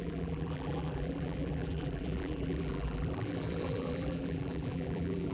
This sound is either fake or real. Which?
fake